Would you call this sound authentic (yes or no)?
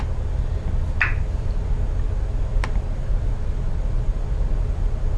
yes